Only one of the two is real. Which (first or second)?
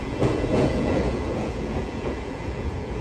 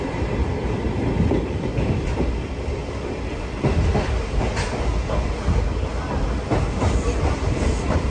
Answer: second